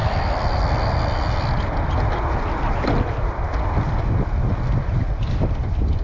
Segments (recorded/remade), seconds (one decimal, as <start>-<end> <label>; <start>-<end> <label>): 0.0-6.0 recorded